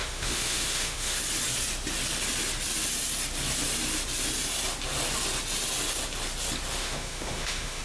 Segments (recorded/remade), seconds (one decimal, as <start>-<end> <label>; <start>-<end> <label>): 0.0-1.2 remade; 1.2-6.8 recorded; 6.8-7.8 remade

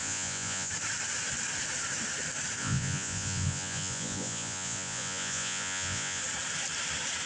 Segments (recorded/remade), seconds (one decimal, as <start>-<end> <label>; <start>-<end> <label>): 0.0-0.7 remade; 0.7-2.6 recorded; 2.6-6.2 remade; 6.2-7.3 recorded

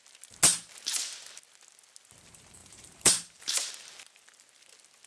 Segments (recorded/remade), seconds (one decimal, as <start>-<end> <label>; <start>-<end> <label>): 0.0-2.6 recorded; 2.6-3.7 remade; 3.7-5.1 recorded

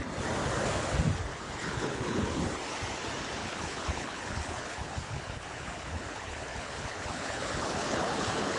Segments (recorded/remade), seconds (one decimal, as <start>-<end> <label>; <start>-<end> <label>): 0.0-1.3 recorded; 1.3-2.4 remade; 2.4-3.4 recorded; 3.4-8.6 remade

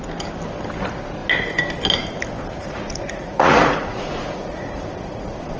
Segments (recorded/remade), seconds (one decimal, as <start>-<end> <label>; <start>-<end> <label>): 0.0-2.6 recorded; 2.6-5.6 remade

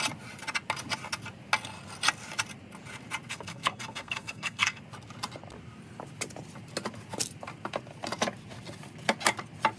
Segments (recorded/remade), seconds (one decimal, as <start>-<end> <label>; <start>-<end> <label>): 0.0-3.3 recorded; 3.3-4.8 remade; 4.8-9.8 recorded

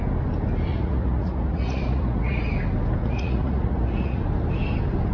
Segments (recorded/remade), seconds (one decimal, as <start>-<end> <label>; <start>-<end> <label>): 0.0-0.7 recorded; 0.7-2.5 remade; 2.5-3.0 recorded; 3.0-4.2 remade; 4.2-5.1 recorded

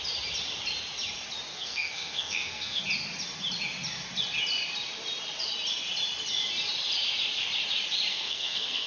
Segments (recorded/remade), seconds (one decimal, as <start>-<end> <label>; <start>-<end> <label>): 0.0-1.5 recorded; 1.5-2.8 remade; 2.8-8.1 recorded; 8.1-8.9 remade